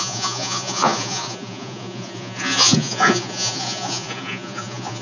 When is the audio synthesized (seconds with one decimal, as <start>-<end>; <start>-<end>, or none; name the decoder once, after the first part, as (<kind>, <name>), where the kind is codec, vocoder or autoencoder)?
0.0-5.0 (vocoder, Vocos)